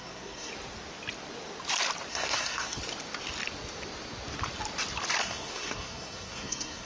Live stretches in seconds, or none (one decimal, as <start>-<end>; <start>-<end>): 0.5-2.1; 2.8-5.2

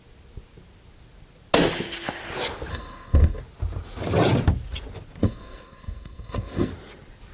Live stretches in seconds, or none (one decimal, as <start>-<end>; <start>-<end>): 0.0-2.7; 3.4-5.2; 6.7-7.3

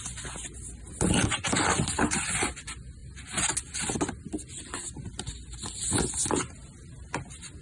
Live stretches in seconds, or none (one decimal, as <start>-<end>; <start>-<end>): 0.0-7.6

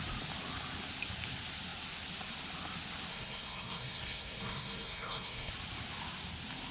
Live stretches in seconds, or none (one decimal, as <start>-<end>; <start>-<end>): 0.0-3.1; 5.5-6.7

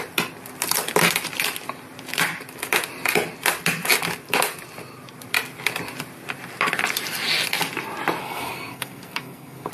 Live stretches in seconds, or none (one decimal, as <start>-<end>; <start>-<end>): 0.0-8.2

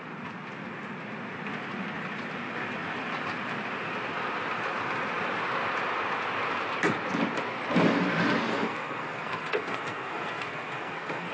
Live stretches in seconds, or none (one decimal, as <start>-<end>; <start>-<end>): 0.0-8.5

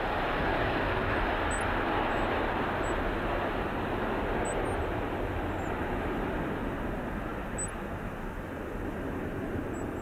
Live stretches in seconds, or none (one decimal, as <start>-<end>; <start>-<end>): 0.0-10.0